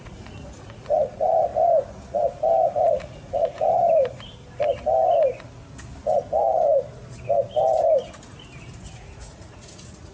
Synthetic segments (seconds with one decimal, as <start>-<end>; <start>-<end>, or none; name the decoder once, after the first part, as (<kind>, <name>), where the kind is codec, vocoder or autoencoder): 0.0-1.5 (vocoder, Vocos); 2.9-3.8; 8.7-10.1